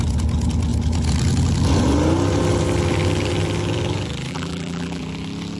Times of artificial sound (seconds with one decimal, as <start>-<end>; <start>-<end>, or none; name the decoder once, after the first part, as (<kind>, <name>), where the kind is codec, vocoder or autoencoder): 4.3-5.0 (vocoder, BigVGAN v2)